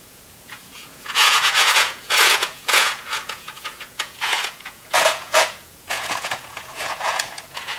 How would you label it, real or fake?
fake